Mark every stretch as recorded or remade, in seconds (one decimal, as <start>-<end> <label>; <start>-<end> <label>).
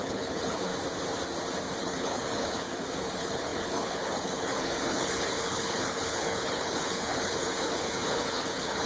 0.0-0.7 remade; 0.7-1.8 recorded; 1.8-8.9 remade